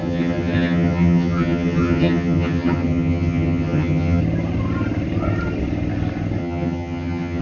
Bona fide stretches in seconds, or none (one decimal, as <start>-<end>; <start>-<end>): 4.2-6.4